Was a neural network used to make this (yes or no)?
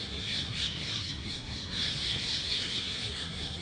yes